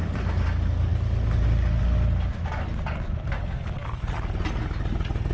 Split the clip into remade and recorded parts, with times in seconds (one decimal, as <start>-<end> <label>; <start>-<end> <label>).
0.0-5.3 recorded